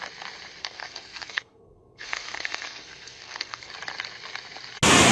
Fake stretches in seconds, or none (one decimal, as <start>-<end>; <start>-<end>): 0.6-3.7